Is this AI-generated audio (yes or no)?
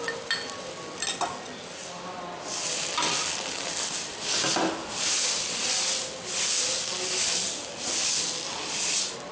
no